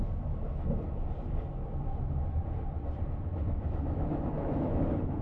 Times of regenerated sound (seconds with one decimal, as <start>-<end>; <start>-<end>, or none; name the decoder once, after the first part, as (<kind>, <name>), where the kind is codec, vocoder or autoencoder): 3.3-5.2 (autoencoder, DAC-VAE)